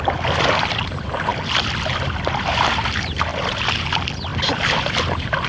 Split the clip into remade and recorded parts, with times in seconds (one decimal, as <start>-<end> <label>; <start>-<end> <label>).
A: 0.0-1.3 remade; 1.3-2.3 recorded; 2.3-3.3 remade; 3.3-3.9 recorded; 3.9-5.5 remade